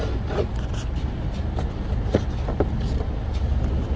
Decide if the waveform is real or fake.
real